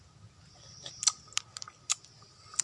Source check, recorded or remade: recorded